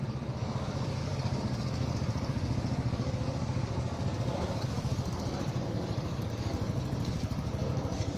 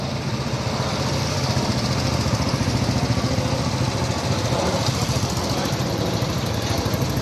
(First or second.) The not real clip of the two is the first